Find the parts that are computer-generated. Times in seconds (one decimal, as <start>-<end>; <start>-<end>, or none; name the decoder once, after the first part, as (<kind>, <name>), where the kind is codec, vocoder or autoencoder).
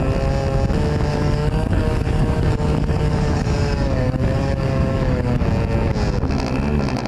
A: 1.1-5.4 (codec, DAC)